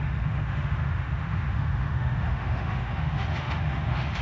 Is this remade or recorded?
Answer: remade